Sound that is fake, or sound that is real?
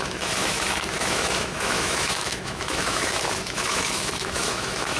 fake